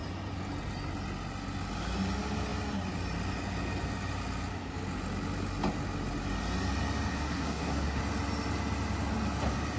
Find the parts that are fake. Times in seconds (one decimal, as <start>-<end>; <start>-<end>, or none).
7.1-8.0